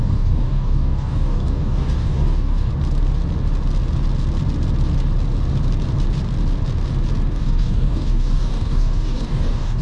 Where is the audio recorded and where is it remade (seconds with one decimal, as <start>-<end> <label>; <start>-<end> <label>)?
0.0-2.7 remade; 2.7-7.3 recorded; 7.3-9.8 remade